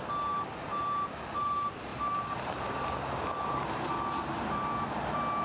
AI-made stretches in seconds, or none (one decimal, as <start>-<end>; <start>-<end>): none